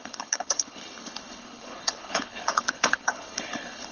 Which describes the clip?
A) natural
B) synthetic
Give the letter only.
B